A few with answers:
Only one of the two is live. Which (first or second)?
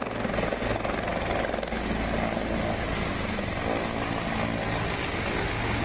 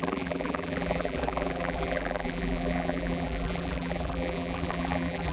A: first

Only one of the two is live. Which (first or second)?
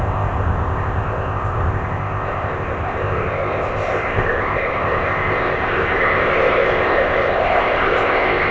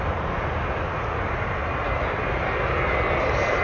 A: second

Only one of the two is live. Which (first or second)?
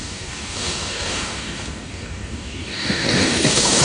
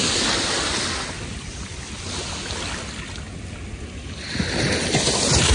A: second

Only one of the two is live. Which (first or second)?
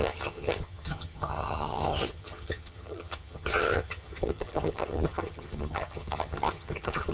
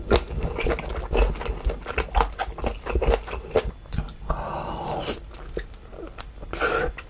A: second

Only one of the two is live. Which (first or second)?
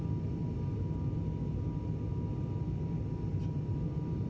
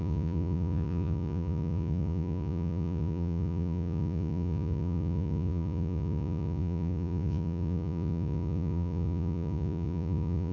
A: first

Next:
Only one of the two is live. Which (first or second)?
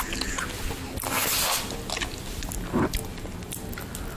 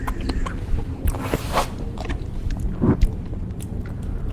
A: first